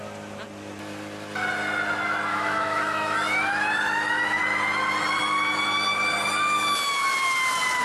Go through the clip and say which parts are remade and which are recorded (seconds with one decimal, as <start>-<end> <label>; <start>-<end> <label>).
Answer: 0.0-2.3 recorded; 2.3-4.4 remade; 4.4-7.8 recorded